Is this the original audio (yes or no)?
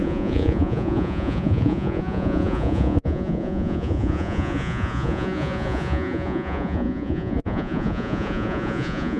no